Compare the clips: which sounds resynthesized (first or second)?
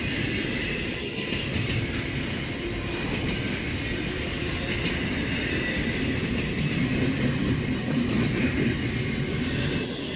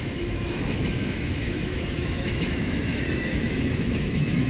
second